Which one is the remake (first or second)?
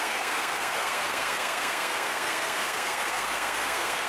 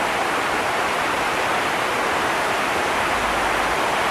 first